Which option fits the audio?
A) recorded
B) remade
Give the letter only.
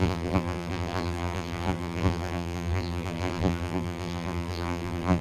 B